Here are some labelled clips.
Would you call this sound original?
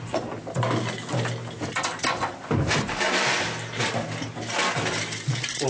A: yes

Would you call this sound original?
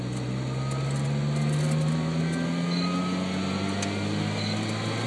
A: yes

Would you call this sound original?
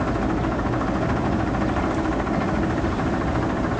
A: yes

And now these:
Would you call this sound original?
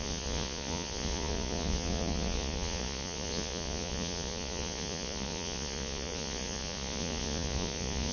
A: no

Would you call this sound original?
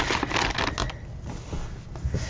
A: yes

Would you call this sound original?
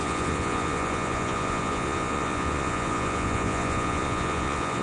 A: no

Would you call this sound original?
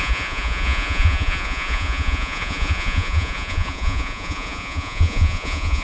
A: no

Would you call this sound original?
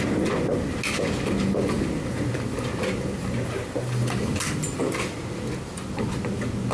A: yes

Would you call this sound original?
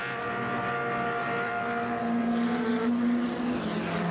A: yes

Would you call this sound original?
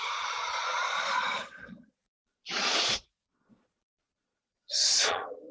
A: no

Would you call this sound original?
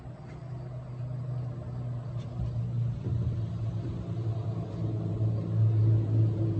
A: yes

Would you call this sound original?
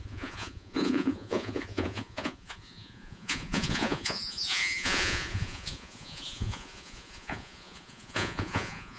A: no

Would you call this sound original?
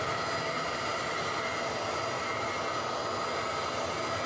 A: yes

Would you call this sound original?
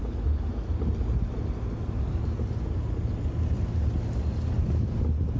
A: yes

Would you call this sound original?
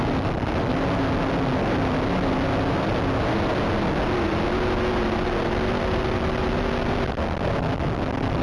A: yes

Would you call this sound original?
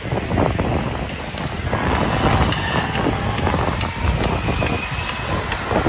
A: yes